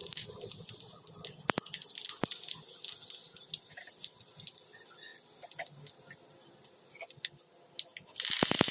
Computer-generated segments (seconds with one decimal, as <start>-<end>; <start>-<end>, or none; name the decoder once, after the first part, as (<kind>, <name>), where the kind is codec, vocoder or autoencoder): 0.0-0.7 (vocoder, BigVGAN v2); 3.2-3.9